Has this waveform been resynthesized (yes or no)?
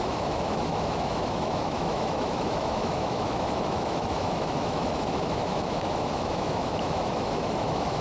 yes